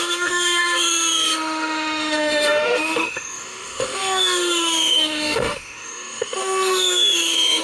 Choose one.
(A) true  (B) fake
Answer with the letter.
B